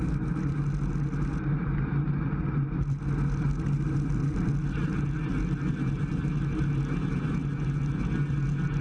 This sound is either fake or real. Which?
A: real